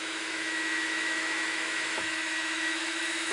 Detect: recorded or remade remade